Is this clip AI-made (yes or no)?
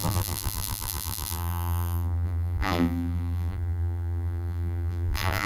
yes